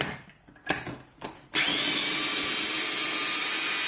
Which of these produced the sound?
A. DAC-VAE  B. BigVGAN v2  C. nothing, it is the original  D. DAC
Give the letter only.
C